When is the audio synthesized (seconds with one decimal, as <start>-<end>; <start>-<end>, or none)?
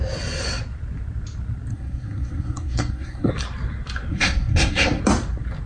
1.7-3.3; 4.1-5.0